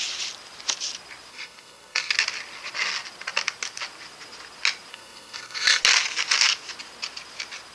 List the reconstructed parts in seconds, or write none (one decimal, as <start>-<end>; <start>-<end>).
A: 1.3-2.1; 4.9-5.8